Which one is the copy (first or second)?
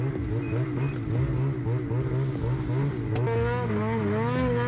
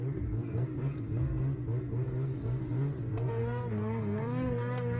second